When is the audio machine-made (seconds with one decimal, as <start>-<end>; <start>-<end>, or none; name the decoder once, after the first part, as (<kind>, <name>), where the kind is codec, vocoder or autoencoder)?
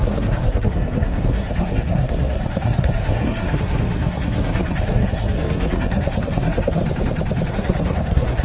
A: 0.0-6.8 (codec, SNAC); 7.5-8.4